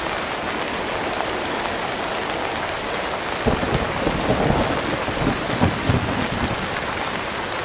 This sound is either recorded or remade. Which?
recorded